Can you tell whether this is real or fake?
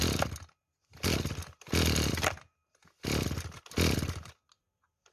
real